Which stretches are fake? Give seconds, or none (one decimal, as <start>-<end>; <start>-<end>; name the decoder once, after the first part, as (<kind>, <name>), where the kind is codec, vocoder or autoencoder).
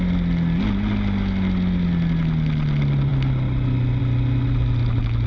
none